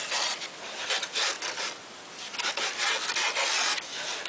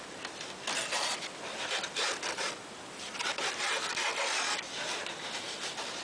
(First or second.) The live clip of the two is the first